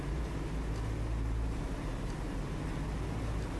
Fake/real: real